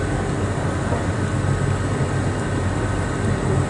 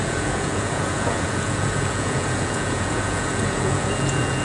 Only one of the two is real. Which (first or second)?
first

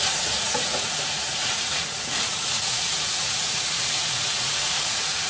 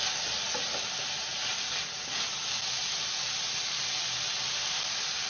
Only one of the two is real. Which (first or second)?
second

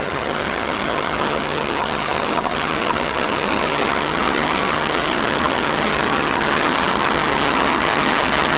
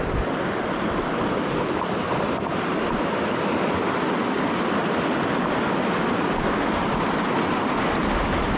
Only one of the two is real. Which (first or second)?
second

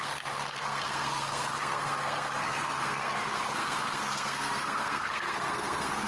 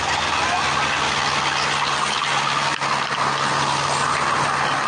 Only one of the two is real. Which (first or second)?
second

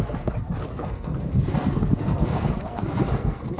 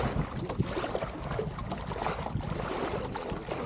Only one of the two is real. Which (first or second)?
second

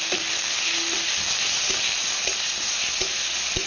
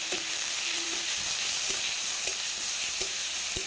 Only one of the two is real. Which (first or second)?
first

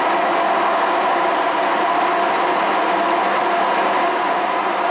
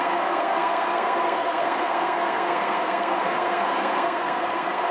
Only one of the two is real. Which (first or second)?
first